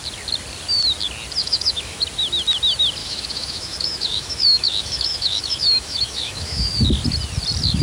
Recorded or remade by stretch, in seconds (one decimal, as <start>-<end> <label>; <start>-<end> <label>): 0.0-1.4 recorded; 1.4-2.0 remade; 2.0-3.0 recorded; 3.0-6.7 remade; 6.7-7.8 recorded